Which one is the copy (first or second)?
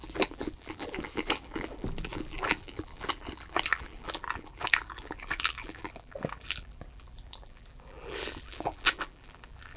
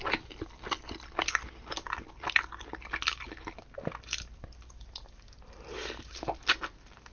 first